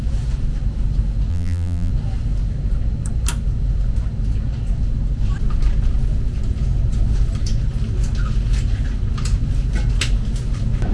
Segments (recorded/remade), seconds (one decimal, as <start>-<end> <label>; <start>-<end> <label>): 0.0-1.3 recorded; 1.3-1.9 remade; 1.9-10.9 recorded